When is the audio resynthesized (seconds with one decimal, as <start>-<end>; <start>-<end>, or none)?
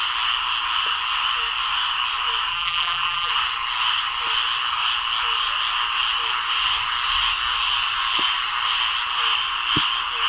2.5-3.3